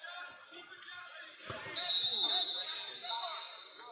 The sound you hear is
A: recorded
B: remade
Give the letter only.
A